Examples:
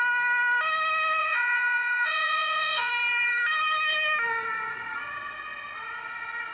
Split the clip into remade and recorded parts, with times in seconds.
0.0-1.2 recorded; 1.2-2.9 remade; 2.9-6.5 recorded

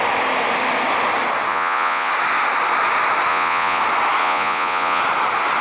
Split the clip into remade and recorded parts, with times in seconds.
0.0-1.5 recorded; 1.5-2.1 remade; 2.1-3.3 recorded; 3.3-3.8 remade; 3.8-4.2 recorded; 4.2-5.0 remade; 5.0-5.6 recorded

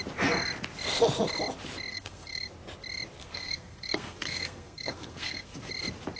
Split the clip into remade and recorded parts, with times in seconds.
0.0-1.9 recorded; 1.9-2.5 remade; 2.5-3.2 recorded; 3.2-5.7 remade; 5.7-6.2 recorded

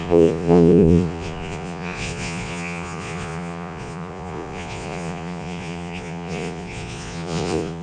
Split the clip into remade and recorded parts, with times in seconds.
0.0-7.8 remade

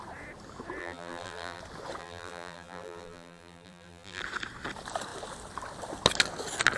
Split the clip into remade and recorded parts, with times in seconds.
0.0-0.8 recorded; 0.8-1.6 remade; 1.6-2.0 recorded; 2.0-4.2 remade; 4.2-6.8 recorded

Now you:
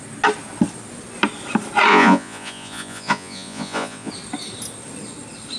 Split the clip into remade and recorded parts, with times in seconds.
0.0-1.9 recorded; 1.9-4.1 remade; 4.1-5.6 recorded

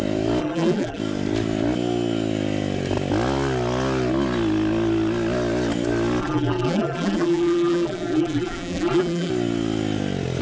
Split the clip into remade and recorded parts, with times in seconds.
0.0-0.4 recorded; 0.4-1.0 remade; 1.0-6.2 recorded; 6.2-9.3 remade; 9.3-10.4 recorded

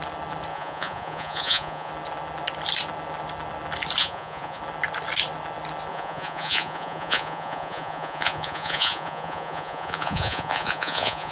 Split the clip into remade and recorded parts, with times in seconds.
0.0-0.5 recorded; 0.5-1.9 remade; 1.9-4.0 recorded; 4.0-4.6 remade; 4.6-5.9 recorded; 5.9-11.3 remade